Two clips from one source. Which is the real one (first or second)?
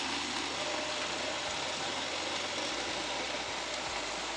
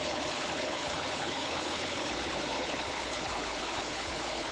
first